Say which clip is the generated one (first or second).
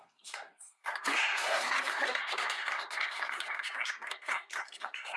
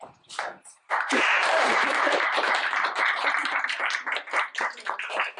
first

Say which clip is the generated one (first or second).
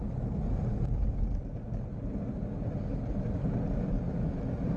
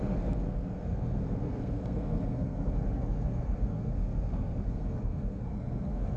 second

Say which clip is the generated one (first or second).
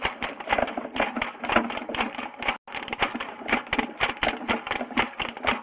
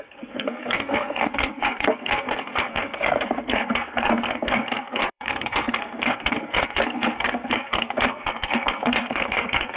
second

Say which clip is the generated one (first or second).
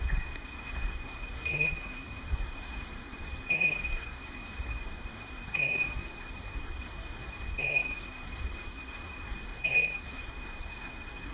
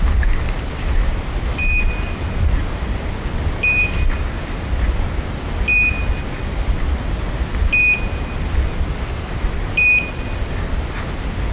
first